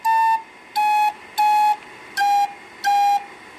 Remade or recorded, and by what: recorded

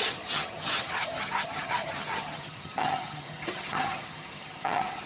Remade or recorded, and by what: remade, vocoder, HiFi-GAN